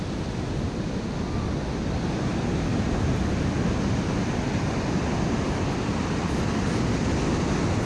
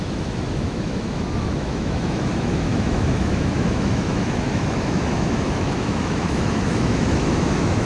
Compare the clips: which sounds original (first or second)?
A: first